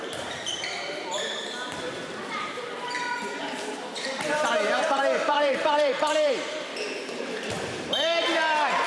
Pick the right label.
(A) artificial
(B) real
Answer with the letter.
A